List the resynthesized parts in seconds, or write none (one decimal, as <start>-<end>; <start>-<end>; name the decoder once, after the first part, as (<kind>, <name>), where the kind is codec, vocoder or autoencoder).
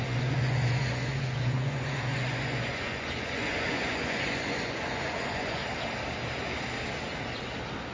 0.0-5.6 (vocoder, Vocos)